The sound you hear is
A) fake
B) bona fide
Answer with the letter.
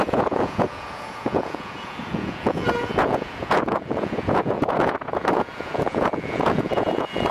A